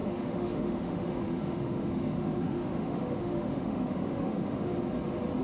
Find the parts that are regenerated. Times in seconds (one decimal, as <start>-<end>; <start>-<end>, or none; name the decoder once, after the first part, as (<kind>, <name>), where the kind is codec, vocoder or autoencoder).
0.0-4.7 (autoencoder, DAC-VAE)